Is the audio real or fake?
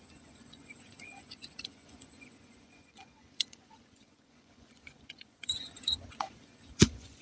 fake